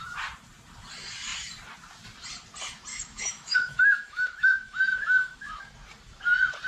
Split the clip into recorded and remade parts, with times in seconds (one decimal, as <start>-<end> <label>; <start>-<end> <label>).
0.0-2.9 recorded; 2.9-5.6 remade; 5.6-6.7 recorded